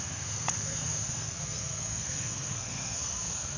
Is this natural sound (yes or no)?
no